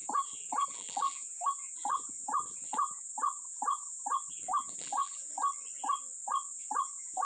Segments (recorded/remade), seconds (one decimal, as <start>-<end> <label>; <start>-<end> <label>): 0.0-5.5 remade; 5.5-6.3 recorded; 6.3-7.2 remade